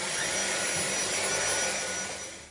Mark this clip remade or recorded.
recorded